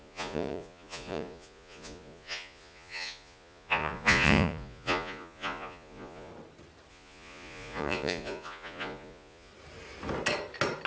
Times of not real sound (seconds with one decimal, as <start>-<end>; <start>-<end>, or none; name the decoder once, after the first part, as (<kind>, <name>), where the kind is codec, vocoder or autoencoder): 0.0-6.3 (vocoder, Vocos); 6.9-9.5